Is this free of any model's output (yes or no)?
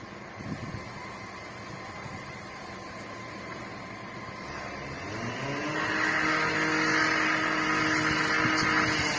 yes